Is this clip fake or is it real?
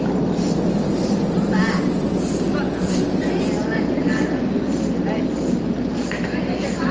real